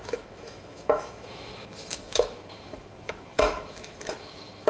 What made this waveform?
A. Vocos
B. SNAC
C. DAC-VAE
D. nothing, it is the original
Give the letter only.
C